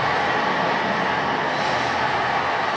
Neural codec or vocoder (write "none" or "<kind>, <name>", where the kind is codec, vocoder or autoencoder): none